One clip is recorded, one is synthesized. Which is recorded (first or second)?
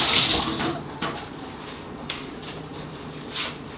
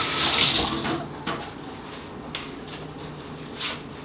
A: second